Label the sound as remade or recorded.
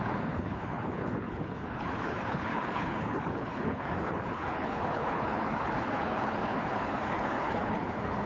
remade